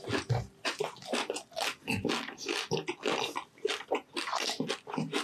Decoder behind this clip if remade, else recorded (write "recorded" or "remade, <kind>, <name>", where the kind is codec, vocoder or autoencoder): recorded